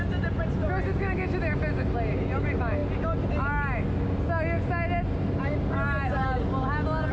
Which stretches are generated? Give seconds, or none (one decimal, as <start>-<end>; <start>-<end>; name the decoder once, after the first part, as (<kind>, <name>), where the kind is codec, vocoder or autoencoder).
none